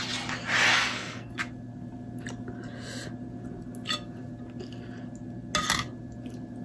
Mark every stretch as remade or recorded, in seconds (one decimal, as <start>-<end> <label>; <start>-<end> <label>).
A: 0.0-0.7 recorded; 0.7-1.3 remade; 1.3-6.6 recorded